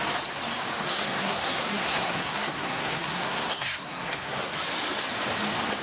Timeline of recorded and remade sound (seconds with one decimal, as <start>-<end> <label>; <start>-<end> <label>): 0.0-0.9 recorded; 0.9-4.4 remade; 4.4-5.8 recorded